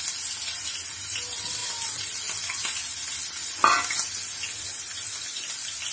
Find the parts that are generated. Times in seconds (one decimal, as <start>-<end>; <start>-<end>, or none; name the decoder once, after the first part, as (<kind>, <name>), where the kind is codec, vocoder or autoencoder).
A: none